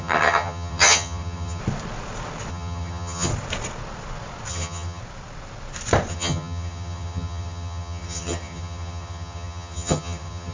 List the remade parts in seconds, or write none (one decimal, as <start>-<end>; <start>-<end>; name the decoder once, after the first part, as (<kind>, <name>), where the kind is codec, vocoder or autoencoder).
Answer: 0.0-1.6 (vocoder, HiFi-GAN); 2.5-3.3; 4.5-5.0; 6.1-10.5